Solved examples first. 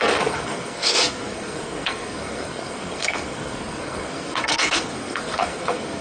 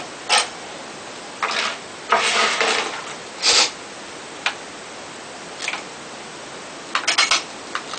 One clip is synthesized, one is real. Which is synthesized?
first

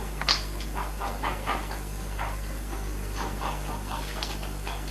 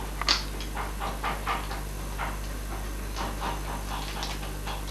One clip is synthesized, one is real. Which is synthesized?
first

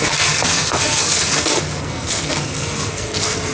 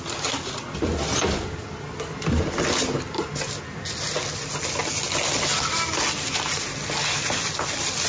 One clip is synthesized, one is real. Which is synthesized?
first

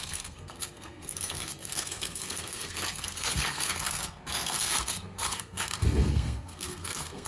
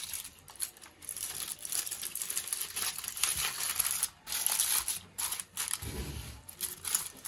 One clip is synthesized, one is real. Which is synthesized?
first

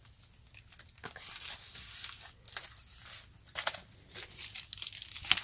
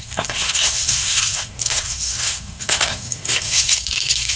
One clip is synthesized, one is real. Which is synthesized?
second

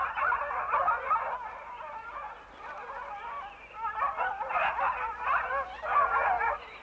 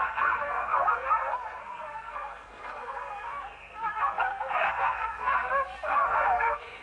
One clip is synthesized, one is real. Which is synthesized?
second